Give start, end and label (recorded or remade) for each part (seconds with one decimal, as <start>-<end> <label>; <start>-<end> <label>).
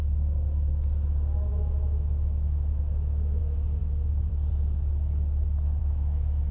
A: 0.0-1.5 recorded; 1.5-3.4 remade; 3.4-5.8 recorded; 5.8-6.5 remade